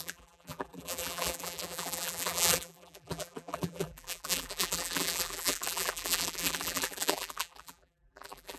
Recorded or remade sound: remade